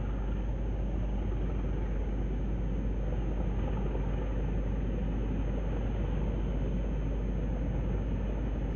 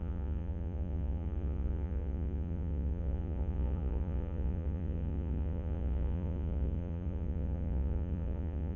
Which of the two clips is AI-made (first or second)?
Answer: second